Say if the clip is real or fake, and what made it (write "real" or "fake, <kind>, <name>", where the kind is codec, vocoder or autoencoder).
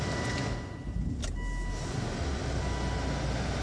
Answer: real